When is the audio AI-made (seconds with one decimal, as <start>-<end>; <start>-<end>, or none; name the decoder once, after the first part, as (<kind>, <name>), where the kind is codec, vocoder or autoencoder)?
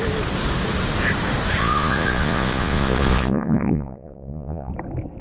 1.6-4.7 (vocoder, Vocos)